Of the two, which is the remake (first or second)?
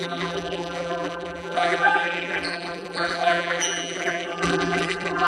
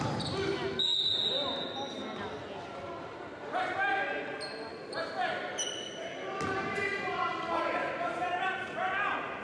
first